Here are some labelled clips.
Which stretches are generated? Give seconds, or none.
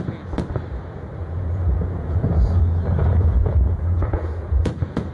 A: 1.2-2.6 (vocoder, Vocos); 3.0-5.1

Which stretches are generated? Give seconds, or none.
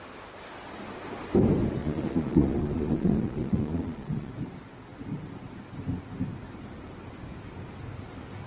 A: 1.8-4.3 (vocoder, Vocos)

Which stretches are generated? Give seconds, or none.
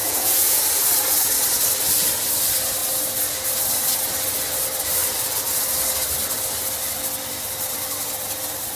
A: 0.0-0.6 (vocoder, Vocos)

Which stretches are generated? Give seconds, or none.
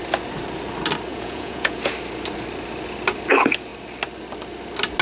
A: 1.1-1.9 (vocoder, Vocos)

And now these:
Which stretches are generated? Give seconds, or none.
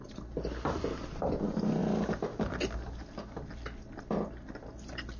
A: none